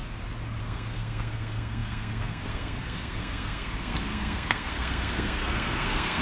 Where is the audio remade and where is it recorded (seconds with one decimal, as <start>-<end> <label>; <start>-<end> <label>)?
0.0-0.6 recorded; 0.6-6.2 remade